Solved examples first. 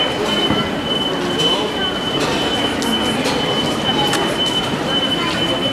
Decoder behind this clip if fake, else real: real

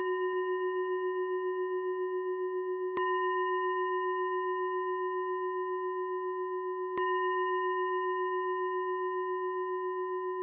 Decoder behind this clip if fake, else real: real